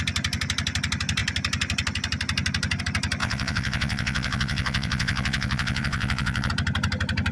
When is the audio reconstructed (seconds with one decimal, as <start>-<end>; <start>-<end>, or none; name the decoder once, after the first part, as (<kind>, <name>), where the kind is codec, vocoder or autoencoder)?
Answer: 3.2-6.5 (vocoder, WaveNeXt)